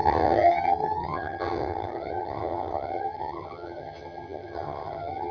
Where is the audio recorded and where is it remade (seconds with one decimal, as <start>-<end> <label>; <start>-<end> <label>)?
0.0-5.3 remade